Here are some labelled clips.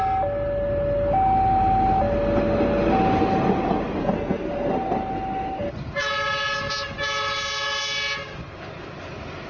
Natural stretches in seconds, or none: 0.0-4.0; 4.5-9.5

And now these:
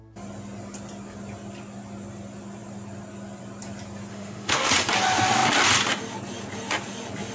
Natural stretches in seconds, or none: 0.0-4.1; 4.7-7.3